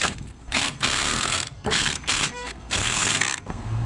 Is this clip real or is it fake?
fake